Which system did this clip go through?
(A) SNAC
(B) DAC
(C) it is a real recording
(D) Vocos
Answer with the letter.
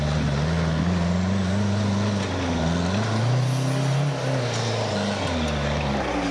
C